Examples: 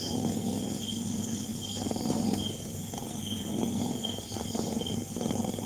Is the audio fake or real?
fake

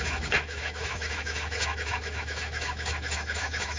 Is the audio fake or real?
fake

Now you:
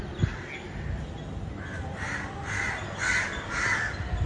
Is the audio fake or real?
real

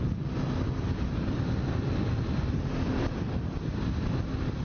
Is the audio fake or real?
real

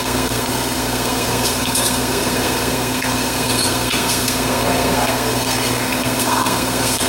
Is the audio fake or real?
fake